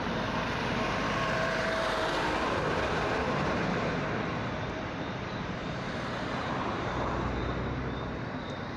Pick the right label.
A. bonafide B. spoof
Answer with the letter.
B